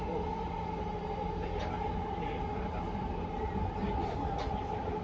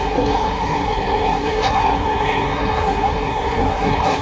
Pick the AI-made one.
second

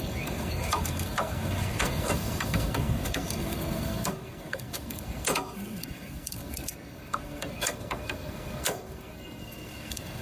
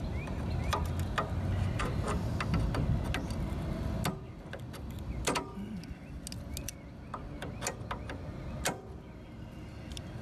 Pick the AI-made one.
first